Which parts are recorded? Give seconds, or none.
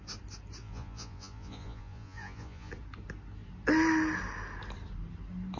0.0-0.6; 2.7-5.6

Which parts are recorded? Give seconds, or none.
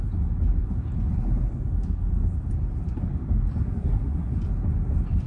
0.0-3.6; 4.4-5.3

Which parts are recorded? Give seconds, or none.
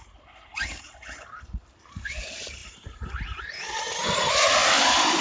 0.0-5.2